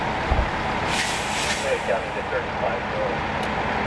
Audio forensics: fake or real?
real